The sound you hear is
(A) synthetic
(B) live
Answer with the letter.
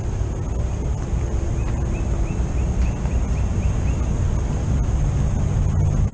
B